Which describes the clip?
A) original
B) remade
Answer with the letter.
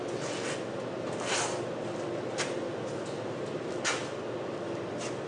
A